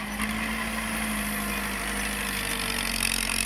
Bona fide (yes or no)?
yes